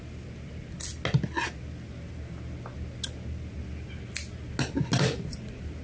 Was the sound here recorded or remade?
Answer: recorded